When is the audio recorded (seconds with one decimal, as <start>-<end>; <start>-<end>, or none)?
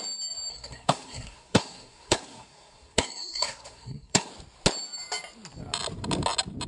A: 0.0-0.5; 4.3-6.7